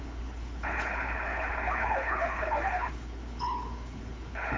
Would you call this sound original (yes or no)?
no